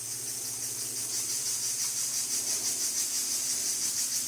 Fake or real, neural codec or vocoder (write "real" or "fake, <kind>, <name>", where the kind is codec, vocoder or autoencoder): real